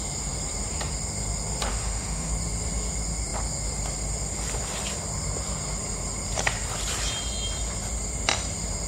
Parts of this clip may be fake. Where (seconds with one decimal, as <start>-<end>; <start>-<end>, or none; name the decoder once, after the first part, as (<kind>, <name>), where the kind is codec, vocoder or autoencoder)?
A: 1.7-2.3 (autoencoder, DAC-VAE)